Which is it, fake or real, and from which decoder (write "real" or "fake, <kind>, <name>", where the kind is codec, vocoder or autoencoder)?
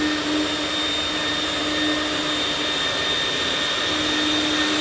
real